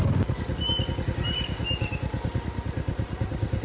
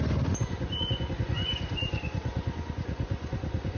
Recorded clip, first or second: first